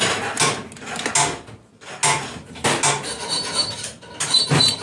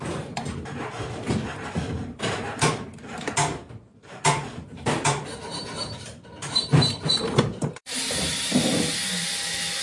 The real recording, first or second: first